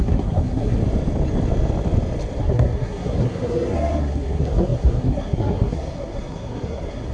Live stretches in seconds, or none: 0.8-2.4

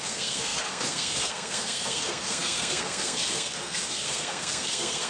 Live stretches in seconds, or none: none